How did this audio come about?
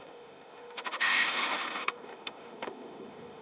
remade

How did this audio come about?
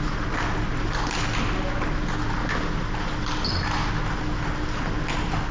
recorded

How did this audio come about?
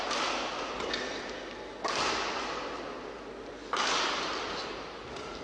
recorded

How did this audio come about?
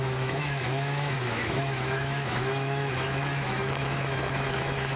remade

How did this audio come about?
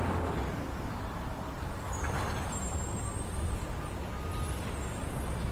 recorded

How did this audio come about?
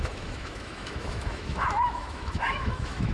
remade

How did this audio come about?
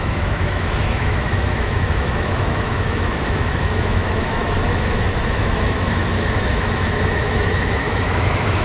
remade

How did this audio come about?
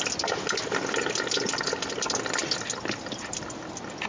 recorded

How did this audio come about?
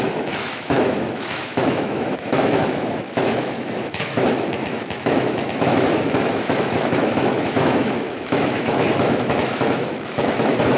remade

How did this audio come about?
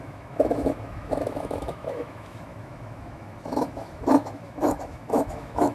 remade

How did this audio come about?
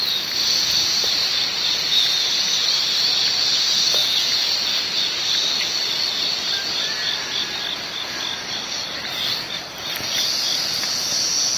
recorded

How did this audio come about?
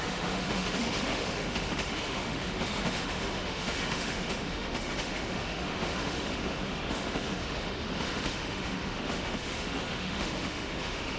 remade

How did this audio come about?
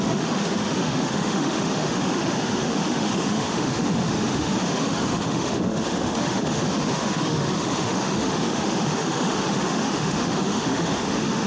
remade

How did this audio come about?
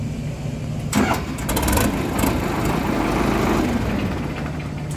recorded